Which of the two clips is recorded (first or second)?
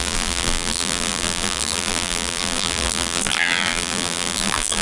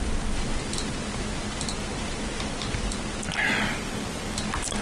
second